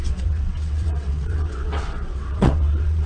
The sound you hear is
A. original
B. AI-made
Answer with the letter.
B